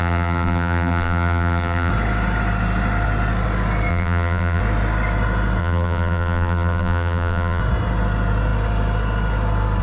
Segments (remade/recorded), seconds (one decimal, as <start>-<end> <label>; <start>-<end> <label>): 0.0-1.9 remade; 1.9-3.9 recorded; 3.9-4.6 remade; 4.6-5.6 recorded; 5.6-7.6 remade; 7.6-9.8 recorded